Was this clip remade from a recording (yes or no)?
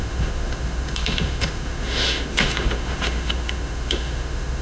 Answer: yes